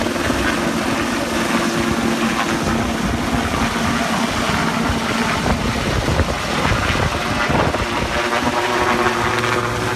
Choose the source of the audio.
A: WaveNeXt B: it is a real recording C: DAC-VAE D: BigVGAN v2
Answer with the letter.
B